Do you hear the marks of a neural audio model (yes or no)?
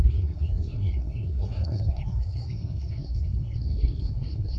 yes